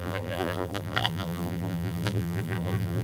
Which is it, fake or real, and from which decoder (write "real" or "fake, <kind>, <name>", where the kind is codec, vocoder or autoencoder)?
fake, vocoder, BigVGAN v2